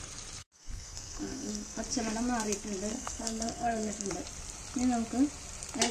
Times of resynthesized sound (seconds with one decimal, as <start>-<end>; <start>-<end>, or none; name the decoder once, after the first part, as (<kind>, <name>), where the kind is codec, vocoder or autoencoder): 0.4-1.8 (codec, SNAC); 2.9-4.1